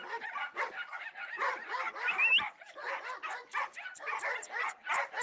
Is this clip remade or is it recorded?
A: recorded